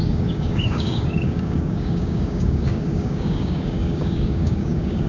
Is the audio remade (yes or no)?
yes